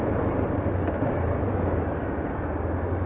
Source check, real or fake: real